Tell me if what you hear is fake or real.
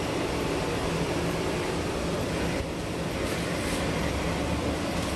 fake